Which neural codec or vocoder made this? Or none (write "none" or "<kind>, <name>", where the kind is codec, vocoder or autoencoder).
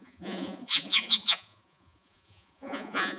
vocoder, Vocos